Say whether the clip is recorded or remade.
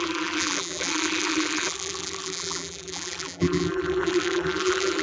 remade